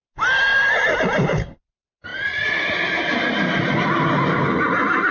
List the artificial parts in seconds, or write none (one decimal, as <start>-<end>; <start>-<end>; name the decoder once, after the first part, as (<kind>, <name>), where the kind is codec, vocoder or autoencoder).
none